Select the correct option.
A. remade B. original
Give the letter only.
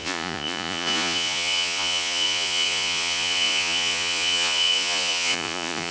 A